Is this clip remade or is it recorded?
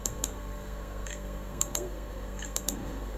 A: remade